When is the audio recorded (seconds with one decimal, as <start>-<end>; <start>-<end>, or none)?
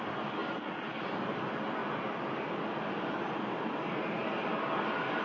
0.0-5.2